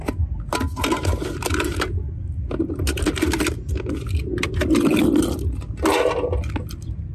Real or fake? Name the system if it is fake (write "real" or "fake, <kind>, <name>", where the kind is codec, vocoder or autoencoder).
real